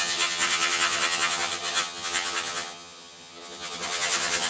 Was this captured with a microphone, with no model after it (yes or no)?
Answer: no